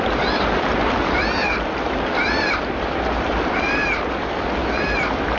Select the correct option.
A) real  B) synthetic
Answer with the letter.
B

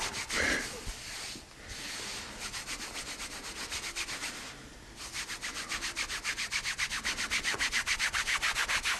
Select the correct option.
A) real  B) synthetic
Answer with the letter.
A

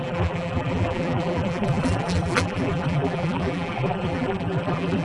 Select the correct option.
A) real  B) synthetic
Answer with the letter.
B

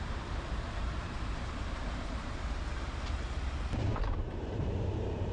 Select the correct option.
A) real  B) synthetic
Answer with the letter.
B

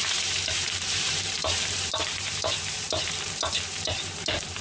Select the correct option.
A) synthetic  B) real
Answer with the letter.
A